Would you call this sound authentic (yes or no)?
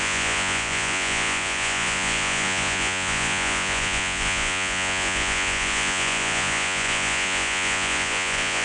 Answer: no